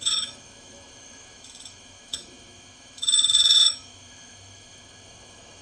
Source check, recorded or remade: remade